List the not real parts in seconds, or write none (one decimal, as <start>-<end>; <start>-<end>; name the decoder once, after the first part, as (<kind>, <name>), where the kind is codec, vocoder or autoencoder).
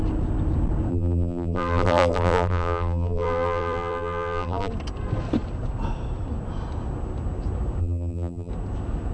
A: 0.9-4.7 (vocoder, BigVGAN v2); 7.8-8.5